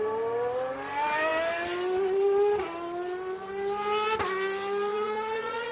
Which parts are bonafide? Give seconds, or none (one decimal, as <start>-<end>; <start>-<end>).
0.0-4.9